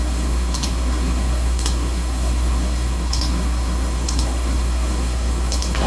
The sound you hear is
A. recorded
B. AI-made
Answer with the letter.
B